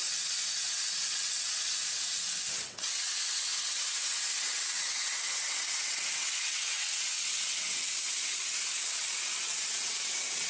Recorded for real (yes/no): no